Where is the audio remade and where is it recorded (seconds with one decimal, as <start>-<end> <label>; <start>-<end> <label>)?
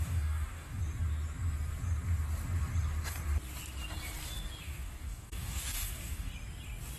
0.0-0.8 remade; 0.8-4.6 recorded; 4.6-6.3 remade; 6.3-7.0 recorded